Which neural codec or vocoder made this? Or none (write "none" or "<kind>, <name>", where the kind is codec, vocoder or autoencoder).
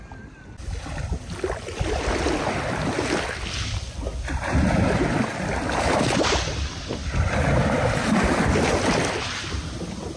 none